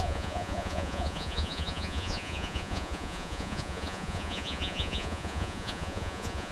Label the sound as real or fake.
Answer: fake